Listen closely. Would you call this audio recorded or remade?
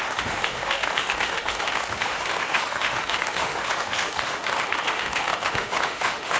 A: remade